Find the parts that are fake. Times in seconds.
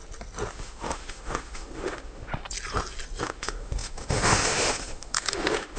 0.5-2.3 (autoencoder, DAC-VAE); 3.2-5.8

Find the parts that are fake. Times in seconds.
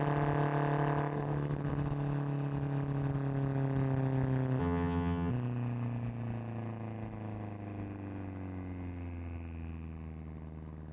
4.6-5.3 (vocoder, HiFi-GAN)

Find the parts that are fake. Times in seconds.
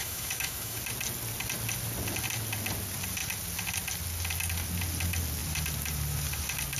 0.0-0.8 (autoencoder, DAC-VAE)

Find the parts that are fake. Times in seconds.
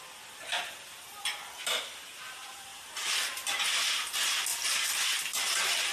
2.7-3.7 (vocoder, BigVGAN v2); 4.5-5.1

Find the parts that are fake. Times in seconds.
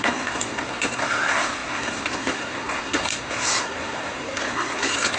0.0-5.2 (codec, SNAC)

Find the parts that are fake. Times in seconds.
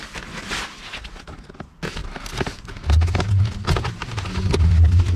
none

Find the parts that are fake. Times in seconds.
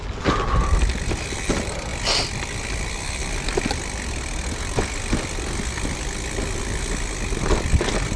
none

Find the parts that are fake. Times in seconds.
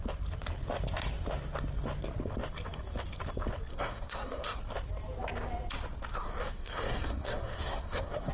3.7-4.6 (codec, SNAC); 6.1-8.3